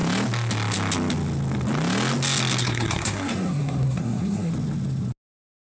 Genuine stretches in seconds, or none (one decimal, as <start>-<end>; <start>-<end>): 0.0-2.6; 4.5-5.7